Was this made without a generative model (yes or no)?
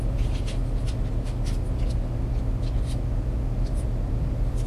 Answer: yes